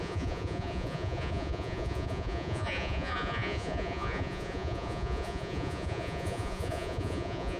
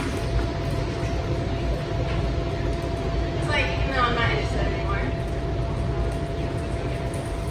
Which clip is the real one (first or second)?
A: second